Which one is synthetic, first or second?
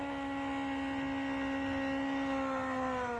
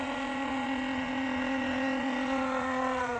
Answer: second